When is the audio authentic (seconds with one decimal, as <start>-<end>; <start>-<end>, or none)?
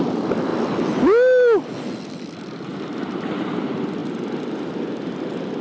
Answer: 0.5-2.1; 2.7-3.3